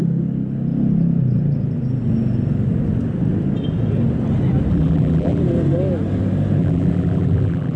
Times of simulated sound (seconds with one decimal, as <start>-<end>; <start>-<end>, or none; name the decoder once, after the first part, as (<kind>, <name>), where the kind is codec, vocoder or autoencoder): 4.7-5.4 (vocoder, BigVGAN v2); 6.6-7.8